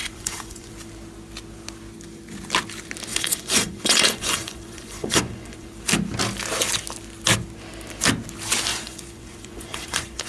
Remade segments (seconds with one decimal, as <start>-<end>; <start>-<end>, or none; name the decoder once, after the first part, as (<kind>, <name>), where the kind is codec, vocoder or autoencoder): 0.0-0.7 (vocoder, Vocos); 3.1-5.7; 8.7-10.3